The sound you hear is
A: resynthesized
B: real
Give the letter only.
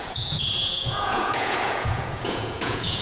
A